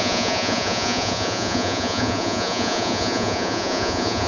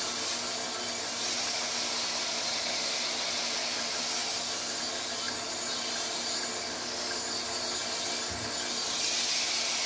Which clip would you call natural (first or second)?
second